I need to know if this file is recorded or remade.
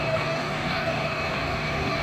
remade